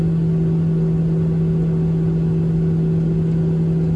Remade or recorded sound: recorded